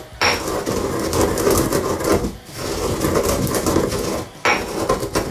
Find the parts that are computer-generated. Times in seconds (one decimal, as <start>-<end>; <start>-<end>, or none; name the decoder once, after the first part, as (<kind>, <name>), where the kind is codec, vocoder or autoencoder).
none